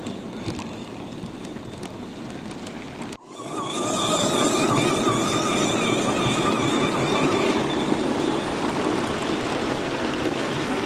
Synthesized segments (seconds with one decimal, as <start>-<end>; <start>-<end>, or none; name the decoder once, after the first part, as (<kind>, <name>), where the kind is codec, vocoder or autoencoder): 9.6-10.9 (codec, SNAC)

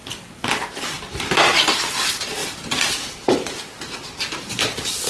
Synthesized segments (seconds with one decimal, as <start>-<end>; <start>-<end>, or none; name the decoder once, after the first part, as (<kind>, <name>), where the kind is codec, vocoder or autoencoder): none

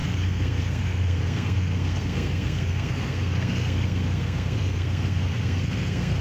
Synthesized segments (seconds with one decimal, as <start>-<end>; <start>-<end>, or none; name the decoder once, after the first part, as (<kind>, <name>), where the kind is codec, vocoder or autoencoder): 0.0-6.2 (codec, SNAC)

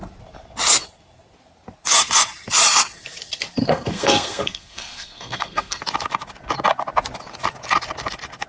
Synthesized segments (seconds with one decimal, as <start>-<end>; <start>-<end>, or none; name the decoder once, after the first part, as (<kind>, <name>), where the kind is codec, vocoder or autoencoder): 3.6-5.8 (codec, SNAC)